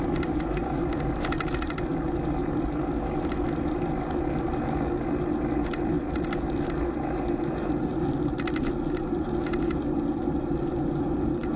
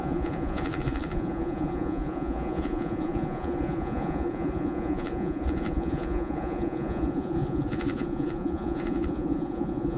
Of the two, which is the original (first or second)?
first